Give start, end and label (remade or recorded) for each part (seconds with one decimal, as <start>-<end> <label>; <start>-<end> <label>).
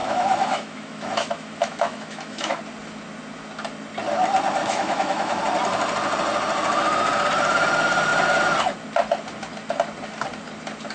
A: 0.0-2.6 remade; 2.6-4.6 recorded; 4.6-5.4 remade; 5.4-10.9 recorded